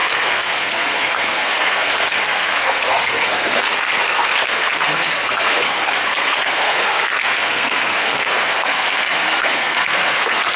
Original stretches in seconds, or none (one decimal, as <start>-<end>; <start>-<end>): none